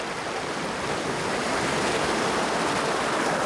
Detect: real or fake real